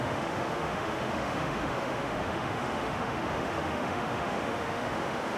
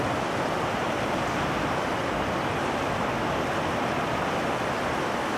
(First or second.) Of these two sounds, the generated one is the first